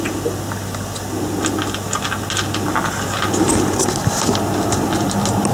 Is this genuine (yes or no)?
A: yes